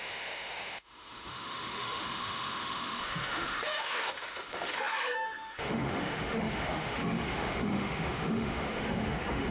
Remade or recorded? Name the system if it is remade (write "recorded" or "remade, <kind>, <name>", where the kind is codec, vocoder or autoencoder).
remade, autoencoder, DAC-VAE